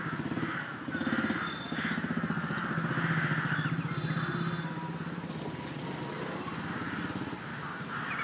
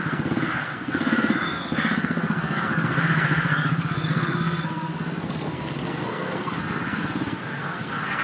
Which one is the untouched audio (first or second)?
first